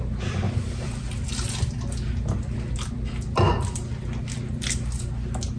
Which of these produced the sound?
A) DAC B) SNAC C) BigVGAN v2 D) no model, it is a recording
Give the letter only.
D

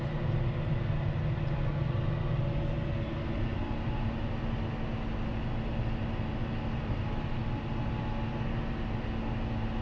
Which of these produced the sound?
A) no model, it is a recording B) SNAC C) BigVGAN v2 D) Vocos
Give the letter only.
A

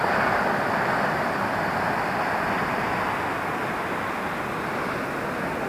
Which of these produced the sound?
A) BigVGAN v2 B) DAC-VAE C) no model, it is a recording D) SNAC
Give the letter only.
C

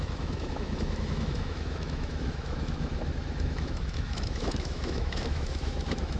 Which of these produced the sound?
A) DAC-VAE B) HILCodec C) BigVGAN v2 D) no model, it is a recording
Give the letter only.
A